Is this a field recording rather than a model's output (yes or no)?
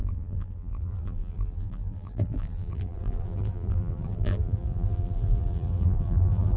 no